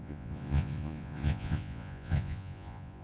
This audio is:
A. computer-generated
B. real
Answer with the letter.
A